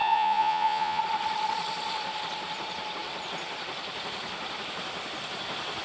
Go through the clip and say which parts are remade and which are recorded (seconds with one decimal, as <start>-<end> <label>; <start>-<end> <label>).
0.0-1.0 remade; 1.0-5.8 recorded